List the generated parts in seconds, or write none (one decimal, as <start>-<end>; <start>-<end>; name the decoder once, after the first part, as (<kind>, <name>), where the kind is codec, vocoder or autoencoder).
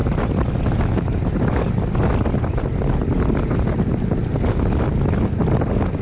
none